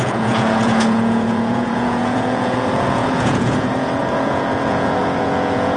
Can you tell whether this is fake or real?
fake